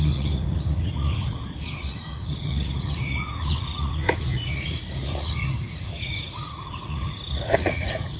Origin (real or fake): fake